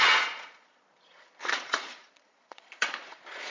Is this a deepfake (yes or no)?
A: yes